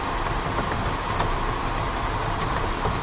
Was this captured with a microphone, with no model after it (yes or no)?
no